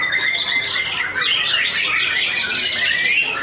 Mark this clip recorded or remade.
recorded